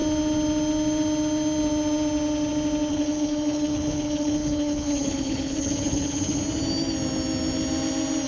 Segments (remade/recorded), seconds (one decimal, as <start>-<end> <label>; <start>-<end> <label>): 0.0-2.9 recorded; 2.9-6.4 remade; 6.4-8.3 recorded